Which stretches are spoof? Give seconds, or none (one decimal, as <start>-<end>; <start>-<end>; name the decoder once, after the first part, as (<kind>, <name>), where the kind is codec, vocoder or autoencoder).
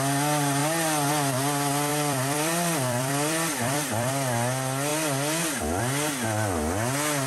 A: 1.9-4.1 (vocoder, BigVGAN v2)